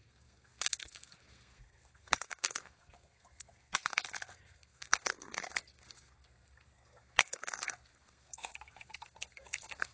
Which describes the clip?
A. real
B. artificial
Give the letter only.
B